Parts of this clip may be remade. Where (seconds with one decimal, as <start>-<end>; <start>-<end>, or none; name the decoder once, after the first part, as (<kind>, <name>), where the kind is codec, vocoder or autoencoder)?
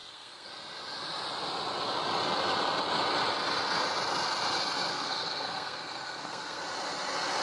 0.0-0.5 (codec, SNAC); 4.9-6.6